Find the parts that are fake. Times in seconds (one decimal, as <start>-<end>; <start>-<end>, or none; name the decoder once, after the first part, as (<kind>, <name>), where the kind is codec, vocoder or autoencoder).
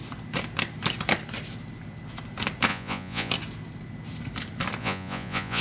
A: 2.7-3.3 (vocoder, Vocos); 4.8-5.6